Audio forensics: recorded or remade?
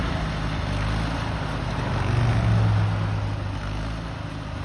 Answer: recorded